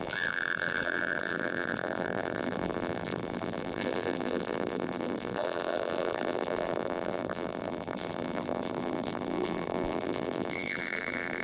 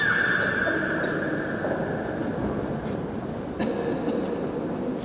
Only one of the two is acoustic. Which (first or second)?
second